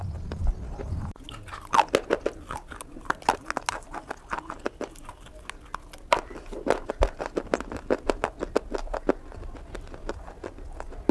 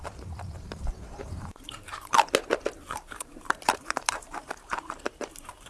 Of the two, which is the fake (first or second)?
second